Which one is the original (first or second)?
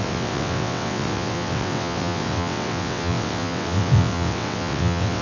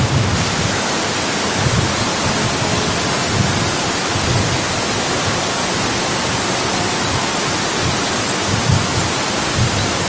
second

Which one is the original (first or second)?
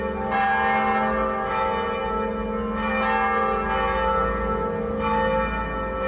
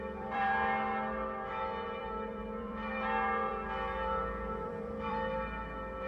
first